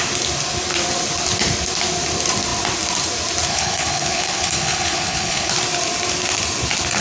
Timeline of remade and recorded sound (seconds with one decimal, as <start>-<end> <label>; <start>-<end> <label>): 0.0-3.5 recorded; 3.5-5.5 remade; 5.5-7.0 recorded